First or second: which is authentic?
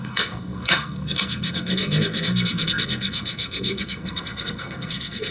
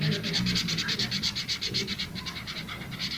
second